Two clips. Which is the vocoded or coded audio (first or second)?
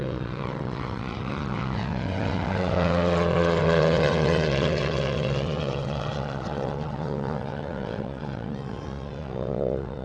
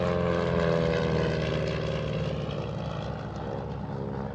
first